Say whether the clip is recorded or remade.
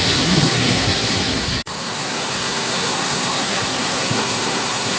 remade